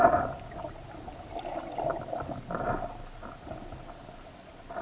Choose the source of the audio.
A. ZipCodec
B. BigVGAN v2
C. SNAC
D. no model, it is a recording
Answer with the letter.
D